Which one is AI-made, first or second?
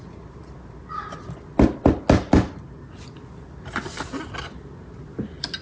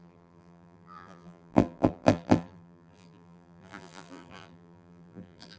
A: second